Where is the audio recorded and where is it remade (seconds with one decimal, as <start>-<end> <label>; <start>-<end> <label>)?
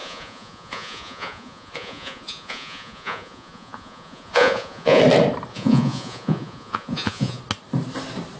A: 0.0-5.0 remade; 5.0-5.5 recorded; 5.5-7.4 remade; 7.4-8.4 recorded